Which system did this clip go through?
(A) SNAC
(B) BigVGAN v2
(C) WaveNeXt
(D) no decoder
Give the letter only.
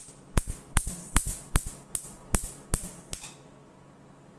D